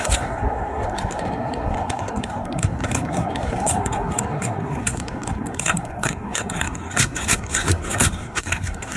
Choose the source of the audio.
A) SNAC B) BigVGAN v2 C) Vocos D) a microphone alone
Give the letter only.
A